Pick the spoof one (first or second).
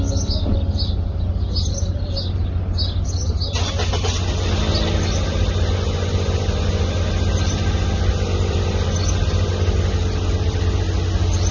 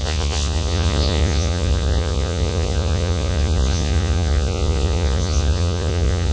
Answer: second